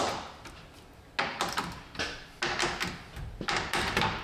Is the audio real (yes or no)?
yes